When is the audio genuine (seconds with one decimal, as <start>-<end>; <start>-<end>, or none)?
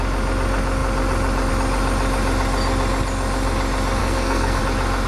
0.0-4.0; 4.6-5.1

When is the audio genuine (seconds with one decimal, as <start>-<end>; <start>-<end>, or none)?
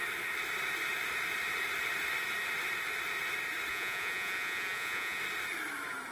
0.0-3.7; 5.2-6.1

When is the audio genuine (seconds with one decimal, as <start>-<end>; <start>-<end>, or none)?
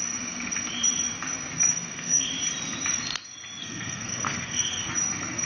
0.0-1.7; 2.3-3.6; 4.9-5.5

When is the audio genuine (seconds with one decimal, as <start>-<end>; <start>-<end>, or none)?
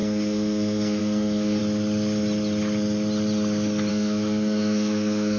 1.6-3.9